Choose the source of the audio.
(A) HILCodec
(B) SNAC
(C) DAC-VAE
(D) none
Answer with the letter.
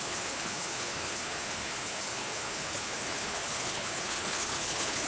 A